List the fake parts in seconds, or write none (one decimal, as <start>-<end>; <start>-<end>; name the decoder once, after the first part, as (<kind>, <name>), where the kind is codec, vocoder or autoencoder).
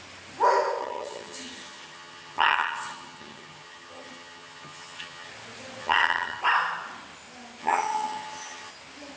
0.8-5.3 (vocoder, HiFi-GAN); 5.8-6.4; 7.6-8.7